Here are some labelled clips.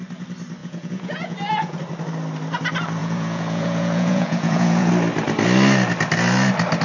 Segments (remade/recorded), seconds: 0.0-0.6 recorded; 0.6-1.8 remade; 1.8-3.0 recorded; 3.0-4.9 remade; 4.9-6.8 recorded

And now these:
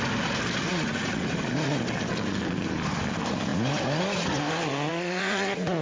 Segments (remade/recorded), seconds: 0.0-0.7 recorded; 0.7-1.3 remade; 1.3-4.9 recorded; 4.9-5.8 remade

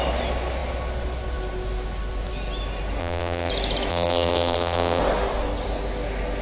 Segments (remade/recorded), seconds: 0.0-3.0 recorded; 3.0-3.5 remade; 3.5-3.9 recorded; 3.9-5.0 remade; 5.0-6.4 recorded

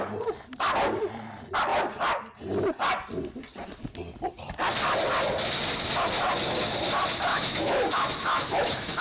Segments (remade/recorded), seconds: 0.0-7.3 recorded; 7.3-9.0 remade